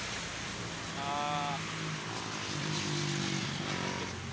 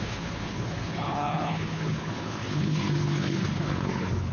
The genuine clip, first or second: first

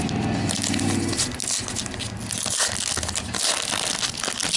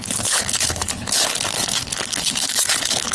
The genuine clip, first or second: first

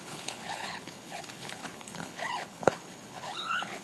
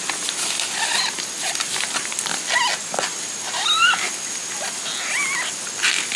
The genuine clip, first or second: second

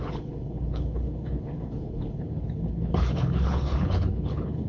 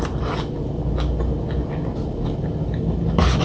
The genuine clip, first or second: second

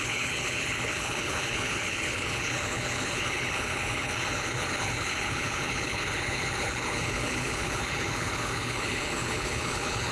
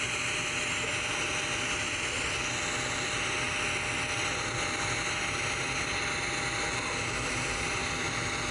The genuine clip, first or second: second